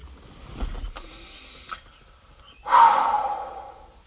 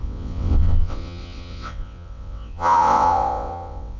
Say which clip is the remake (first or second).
second